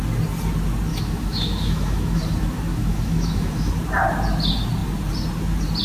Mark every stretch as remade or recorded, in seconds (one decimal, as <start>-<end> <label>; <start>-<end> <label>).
0.0-0.9 recorded; 0.9-2.2 remade; 2.2-2.7 recorded; 2.7-3.7 remade; 3.7-5.8 recorded